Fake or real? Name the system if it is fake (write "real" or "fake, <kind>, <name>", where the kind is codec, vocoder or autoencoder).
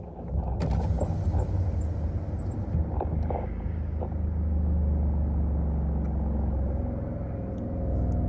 real